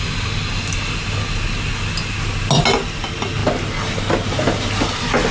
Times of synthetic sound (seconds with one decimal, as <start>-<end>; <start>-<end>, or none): none